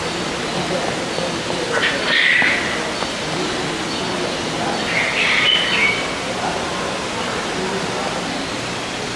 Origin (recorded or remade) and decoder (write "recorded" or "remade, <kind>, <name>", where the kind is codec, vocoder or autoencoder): recorded